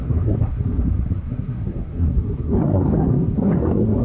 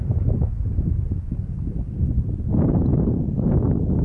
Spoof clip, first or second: first